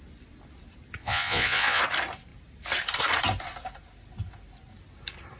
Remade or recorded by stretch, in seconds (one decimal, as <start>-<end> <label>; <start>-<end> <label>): 0.0-1.0 recorded; 1.0-1.8 remade; 1.8-5.4 recorded